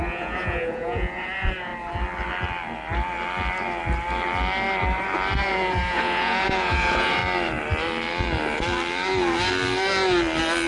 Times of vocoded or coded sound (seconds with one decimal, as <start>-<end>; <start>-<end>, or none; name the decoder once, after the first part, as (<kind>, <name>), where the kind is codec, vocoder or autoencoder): 0.0-1.7 (vocoder, Vocos); 5.4-7.2